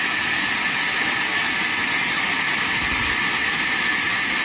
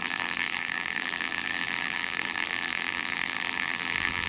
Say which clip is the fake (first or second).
second